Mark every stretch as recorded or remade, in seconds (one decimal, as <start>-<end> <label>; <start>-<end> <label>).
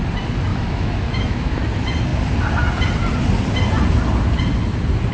0.0-0.5 recorded; 0.5-1.6 remade; 1.6-5.1 recorded